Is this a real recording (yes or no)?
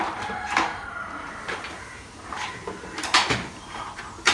no